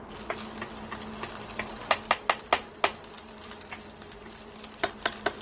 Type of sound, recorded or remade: recorded